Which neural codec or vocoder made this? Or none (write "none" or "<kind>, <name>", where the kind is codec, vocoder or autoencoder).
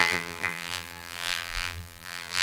vocoder, BigVGAN v2